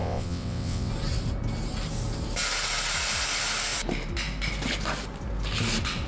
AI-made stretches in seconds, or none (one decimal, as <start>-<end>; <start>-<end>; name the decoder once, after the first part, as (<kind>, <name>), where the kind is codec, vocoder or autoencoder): 0.0-0.9 (vocoder, WaveNeXt)

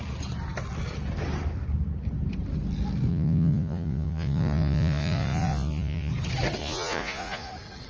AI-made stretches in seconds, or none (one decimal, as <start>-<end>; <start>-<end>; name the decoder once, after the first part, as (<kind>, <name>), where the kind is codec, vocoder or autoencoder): 3.1-6.1 (vocoder, Vocos); 6.6-7.5

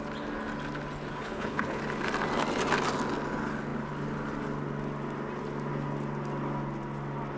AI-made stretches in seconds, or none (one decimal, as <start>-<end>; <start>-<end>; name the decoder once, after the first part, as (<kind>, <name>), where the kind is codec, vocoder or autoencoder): 1.1-1.8 (codec, HILCodec)

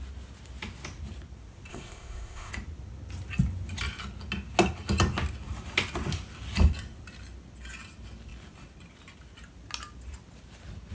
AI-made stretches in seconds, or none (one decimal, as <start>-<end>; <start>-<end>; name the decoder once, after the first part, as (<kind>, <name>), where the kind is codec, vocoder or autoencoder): 1.7-2.5 (codec, ZipCodec)

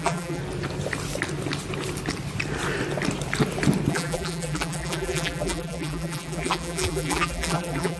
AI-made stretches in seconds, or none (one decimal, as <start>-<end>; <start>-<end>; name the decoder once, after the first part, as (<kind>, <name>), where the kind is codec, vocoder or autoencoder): 0.0-0.4 (vocoder, BigVGAN v2); 3.9-8.0